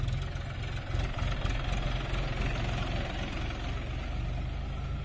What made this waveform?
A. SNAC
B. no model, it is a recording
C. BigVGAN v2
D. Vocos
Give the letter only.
B